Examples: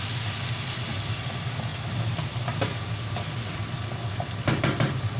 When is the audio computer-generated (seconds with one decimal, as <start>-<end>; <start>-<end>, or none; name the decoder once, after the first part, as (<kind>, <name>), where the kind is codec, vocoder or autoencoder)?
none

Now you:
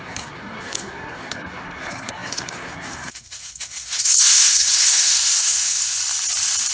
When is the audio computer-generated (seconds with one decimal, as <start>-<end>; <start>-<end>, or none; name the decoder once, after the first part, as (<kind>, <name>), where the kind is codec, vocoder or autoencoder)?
0.0-5.8 (codec, SNAC)

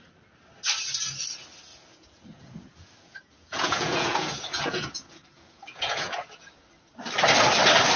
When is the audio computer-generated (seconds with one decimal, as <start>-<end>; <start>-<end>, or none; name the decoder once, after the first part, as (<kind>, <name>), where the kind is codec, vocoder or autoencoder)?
1.7-6.5 (vocoder, Vocos)

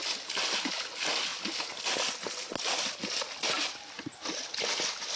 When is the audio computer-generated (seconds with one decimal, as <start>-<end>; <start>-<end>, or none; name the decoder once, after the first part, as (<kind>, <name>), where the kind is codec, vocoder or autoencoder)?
none

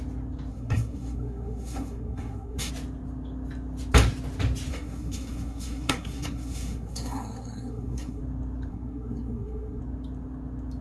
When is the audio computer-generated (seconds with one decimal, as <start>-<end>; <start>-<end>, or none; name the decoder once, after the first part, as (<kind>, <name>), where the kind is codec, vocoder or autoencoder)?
0.5-2.7 (codec, SNAC); 4.7-8.2; 8.7-9.8

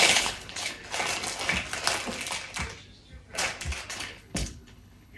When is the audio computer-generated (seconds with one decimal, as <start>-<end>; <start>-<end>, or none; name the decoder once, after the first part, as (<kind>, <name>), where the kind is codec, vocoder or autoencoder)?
0.0-0.8 (codec, HILCodec); 3.9-5.2